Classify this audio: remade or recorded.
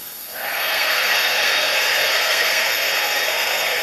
remade